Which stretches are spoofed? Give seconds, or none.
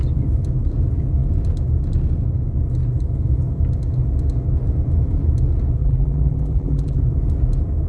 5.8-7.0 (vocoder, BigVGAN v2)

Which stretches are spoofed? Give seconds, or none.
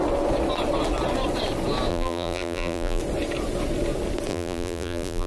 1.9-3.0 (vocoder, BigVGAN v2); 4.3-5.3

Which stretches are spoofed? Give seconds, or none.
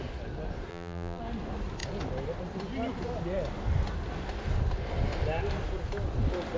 0.7-1.2 (vocoder, BigVGAN v2)